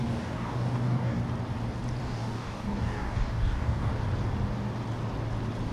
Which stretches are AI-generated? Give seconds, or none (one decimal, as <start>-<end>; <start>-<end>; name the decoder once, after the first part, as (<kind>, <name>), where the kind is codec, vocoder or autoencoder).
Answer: 0.0-1.2 (codec, DAC); 2.0-3.9